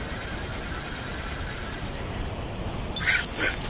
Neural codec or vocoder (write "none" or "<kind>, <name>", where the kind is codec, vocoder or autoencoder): none